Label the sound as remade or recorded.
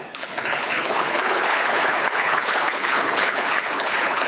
remade